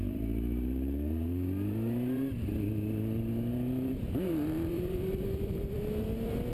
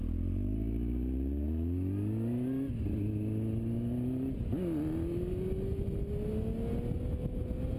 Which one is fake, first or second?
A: first